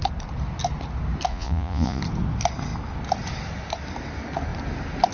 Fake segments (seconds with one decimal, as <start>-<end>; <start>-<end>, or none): 1.3-2.0